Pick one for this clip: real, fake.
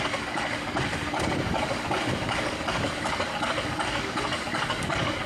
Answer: fake